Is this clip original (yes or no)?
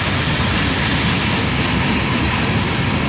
yes